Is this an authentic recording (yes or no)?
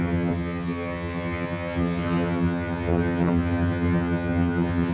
no